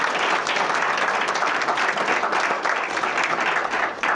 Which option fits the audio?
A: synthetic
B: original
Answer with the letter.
B